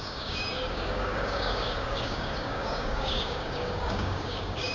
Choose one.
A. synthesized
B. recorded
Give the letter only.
A